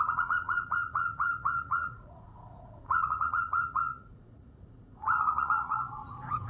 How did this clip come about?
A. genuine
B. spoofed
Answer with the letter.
B